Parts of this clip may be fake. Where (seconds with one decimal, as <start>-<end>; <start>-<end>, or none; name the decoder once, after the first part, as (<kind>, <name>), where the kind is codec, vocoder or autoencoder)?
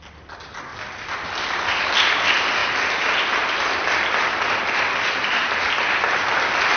2.6-6.3 (vocoder, BigVGAN v2)